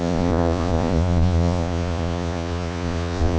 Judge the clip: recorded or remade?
remade